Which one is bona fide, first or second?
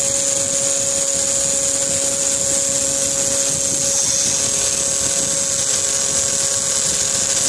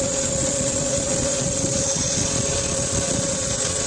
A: first